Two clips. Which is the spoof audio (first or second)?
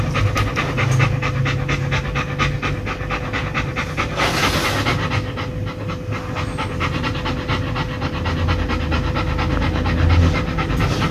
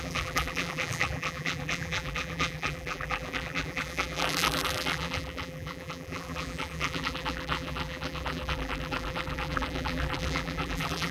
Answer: second